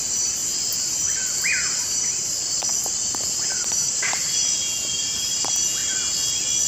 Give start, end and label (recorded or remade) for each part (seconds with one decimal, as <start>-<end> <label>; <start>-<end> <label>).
0.0-0.4 remade; 0.4-1.7 recorded; 1.7-2.7 remade; 2.7-3.5 recorded; 3.5-4.4 remade; 4.4-5.0 recorded; 5.0-5.8 remade; 5.8-6.7 recorded